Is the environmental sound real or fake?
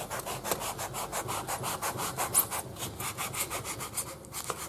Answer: real